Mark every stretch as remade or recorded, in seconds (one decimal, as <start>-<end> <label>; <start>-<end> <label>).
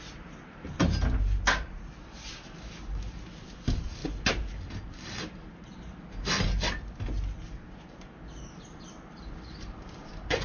0.0-10.4 recorded